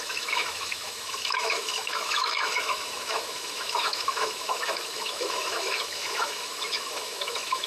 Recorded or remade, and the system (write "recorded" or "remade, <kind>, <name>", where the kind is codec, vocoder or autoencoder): remade, autoencoder, DAC-VAE